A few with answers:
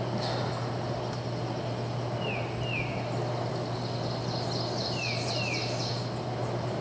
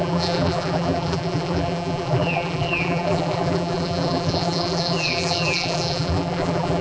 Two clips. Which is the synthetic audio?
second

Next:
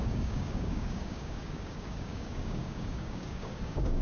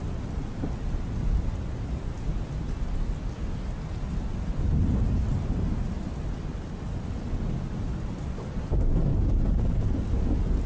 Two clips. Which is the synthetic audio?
first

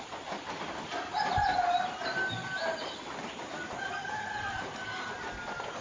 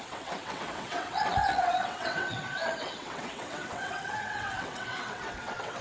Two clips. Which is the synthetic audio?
second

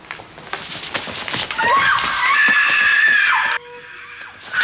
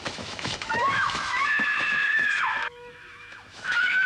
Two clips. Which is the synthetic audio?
second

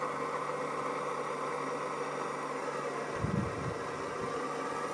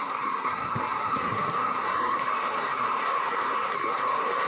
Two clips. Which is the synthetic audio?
second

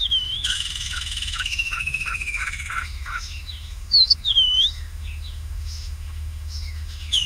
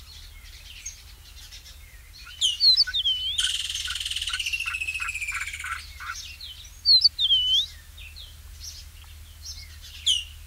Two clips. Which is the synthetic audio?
first